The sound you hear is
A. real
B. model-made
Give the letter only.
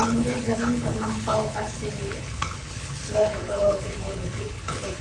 B